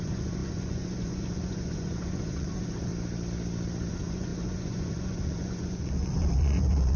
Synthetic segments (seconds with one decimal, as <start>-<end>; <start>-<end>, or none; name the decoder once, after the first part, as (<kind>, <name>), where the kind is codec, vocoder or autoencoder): 0.0-2.9 (vocoder, Vocos); 3.9-7.0